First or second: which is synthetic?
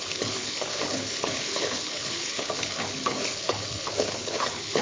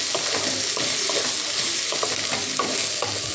first